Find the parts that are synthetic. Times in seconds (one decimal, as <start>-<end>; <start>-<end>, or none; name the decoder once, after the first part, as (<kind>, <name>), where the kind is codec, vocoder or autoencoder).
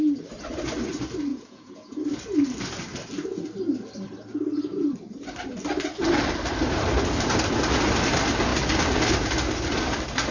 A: 1.3-2.0 (vocoder, Vocos)